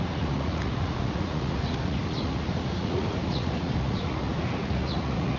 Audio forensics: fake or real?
fake